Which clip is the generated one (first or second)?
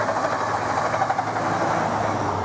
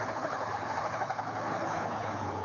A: second